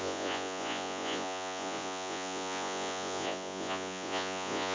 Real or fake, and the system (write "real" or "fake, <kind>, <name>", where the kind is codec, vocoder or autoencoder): fake, vocoder, Vocos